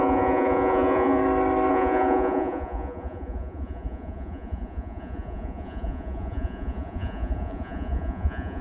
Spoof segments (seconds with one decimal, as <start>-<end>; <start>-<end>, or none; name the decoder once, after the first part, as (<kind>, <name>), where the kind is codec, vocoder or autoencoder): 0.0-1.2 (vocoder, Vocos); 1.7-8.6